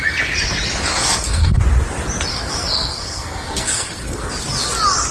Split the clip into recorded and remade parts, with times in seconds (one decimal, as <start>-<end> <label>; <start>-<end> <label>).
0.0-0.9 recorded; 0.9-1.6 remade; 1.6-2.3 recorded; 2.3-4.3 remade; 4.3-5.1 recorded